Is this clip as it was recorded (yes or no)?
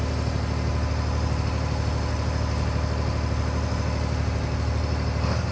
yes